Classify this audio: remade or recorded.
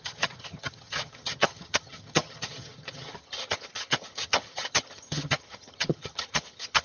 remade